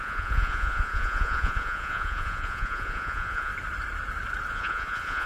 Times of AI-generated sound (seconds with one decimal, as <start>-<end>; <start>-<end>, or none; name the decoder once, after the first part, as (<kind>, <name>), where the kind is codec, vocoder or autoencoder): 0.0-3.5 (vocoder, Vocos); 4.5-5.3